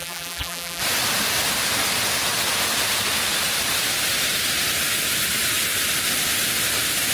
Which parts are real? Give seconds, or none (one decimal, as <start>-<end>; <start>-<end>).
0.8-7.1